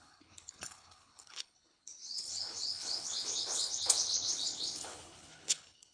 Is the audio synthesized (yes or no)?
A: yes